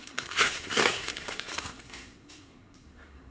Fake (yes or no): yes